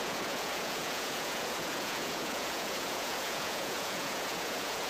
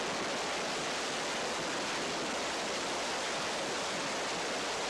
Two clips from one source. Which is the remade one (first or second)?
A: first